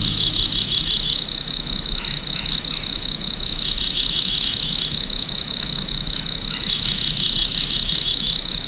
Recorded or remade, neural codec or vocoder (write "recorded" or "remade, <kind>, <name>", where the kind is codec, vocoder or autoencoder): remade, autoencoder, DAC-VAE